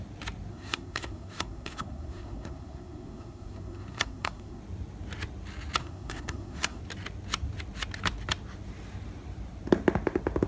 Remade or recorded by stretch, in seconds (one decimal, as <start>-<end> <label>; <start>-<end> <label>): 0.0-0.5 recorded; 0.5-4.6 remade; 4.6-5.8 recorded; 5.8-6.8 remade; 6.8-10.5 recorded